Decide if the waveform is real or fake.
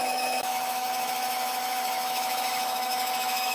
fake